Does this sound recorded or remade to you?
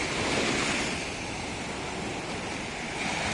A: recorded